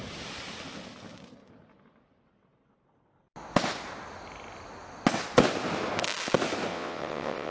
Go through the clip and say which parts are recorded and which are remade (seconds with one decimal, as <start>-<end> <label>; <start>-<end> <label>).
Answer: 0.0-6.7 recorded; 6.7-7.5 remade